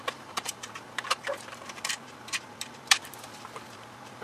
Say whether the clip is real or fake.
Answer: fake